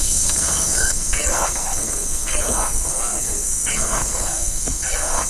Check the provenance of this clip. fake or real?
fake